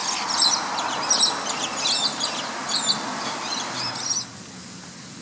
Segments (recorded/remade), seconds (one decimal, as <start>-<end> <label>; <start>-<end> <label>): 0.0-5.2 recorded